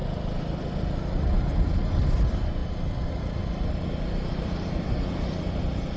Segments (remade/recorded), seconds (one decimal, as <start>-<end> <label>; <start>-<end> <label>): 0.0-6.0 recorded